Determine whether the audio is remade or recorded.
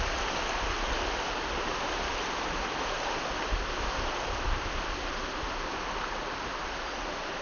recorded